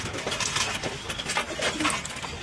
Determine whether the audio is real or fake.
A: real